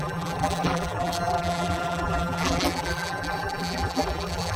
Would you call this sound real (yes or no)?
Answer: no